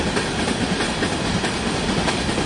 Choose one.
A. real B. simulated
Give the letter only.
A